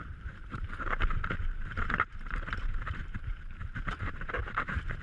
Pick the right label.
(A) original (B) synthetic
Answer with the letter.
B